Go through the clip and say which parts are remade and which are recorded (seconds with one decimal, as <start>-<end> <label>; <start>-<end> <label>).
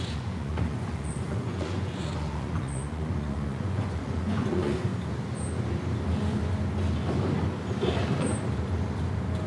0.0-4.9 remade; 4.9-9.5 recorded